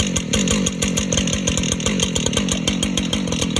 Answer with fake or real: real